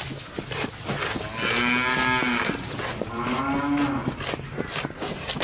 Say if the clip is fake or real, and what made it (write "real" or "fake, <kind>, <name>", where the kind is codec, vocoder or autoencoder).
real